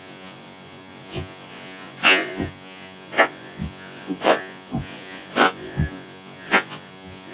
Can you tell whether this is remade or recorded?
remade